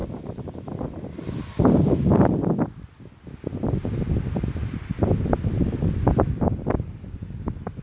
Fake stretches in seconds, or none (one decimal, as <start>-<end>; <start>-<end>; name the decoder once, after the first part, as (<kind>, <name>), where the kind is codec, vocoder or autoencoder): 0.0-7.8 (vocoder, BigVGAN v2)